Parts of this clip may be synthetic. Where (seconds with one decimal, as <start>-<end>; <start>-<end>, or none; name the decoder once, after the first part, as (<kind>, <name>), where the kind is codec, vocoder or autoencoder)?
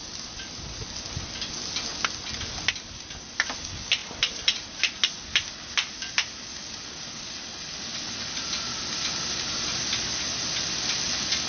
4.0-4.8 (vocoder, BigVGAN v2)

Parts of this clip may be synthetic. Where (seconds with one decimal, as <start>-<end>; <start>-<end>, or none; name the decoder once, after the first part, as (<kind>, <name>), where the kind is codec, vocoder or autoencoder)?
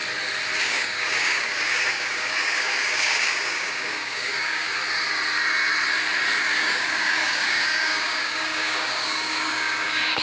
0.6-4.7 (codec, DAC); 6.4-10.2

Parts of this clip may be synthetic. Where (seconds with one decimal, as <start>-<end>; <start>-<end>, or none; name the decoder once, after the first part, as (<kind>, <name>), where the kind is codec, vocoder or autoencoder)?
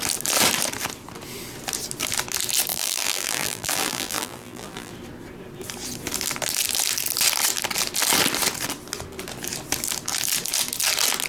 2.7-4.9 (vocoder, BigVGAN v2)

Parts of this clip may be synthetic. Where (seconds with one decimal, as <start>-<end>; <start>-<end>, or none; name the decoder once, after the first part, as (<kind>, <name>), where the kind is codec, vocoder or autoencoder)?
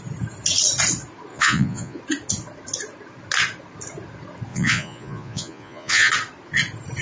1.3-2.0 (vocoder, Vocos); 4.5-6.1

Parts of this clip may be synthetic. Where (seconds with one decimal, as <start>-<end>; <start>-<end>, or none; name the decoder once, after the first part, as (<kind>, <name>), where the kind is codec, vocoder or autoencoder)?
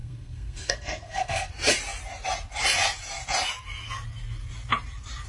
0.0-1.5 (codec, SNAC)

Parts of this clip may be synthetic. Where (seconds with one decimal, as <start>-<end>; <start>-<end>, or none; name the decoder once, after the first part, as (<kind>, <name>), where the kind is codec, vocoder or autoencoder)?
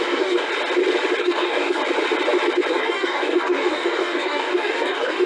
0.0-0.5 (codec, DAC); 1.2-1.8; 2.7-5.3